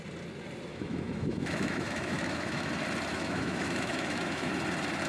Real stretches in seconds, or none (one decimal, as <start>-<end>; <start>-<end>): 0.0-0.7; 2.7-3.1; 4.5-5.1